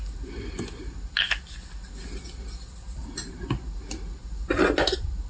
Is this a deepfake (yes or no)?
no